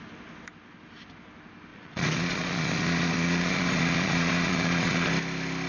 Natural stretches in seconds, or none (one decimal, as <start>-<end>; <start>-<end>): 0.0-1.7; 5.1-5.7